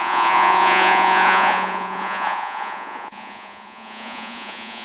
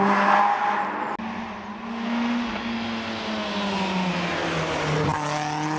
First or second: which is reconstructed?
first